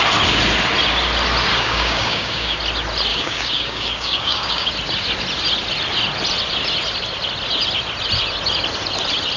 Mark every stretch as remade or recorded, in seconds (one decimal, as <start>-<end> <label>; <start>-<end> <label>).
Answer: 0.0-1.5 recorded; 1.5-2.6 remade; 2.6-3.1 recorded; 3.1-4.7 remade; 4.7-9.4 recorded